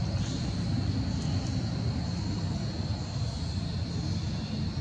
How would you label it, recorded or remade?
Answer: recorded